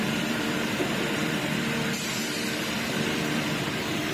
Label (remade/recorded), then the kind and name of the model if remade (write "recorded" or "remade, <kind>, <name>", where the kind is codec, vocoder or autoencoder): remade, vocoder, BigVGAN v2